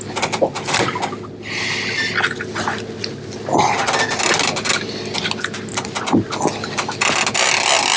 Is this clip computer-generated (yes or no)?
no